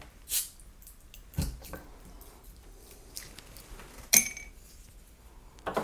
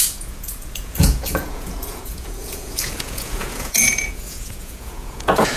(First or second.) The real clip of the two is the first